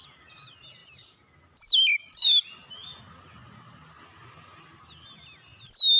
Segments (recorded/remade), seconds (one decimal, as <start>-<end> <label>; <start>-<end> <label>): 0.0-6.0 recorded